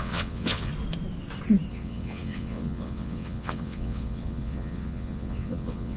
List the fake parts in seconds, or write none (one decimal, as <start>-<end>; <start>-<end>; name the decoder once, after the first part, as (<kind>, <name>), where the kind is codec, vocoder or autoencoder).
0.0-0.7 (vocoder, WaveNeXt); 1.7-6.0